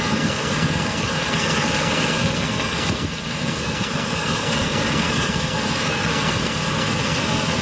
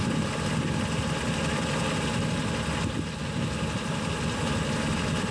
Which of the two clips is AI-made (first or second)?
first